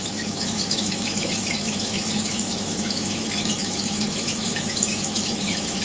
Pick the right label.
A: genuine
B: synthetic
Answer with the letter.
B